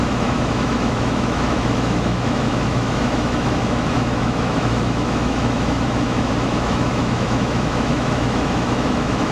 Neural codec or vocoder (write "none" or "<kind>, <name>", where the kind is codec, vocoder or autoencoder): autoencoder, DAC-VAE